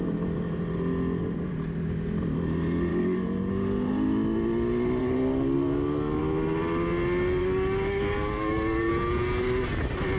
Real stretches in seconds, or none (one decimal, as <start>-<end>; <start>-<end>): 0.0-2.9; 3.5-5.0; 6.2-7.4; 8.9-10.2